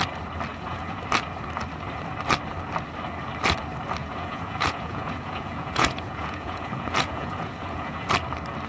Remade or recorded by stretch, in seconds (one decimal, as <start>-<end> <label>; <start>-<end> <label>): 0.0-0.5 recorded; 0.5-1.0 remade; 1.0-4.0 recorded; 4.0-8.1 remade; 8.1-8.7 recorded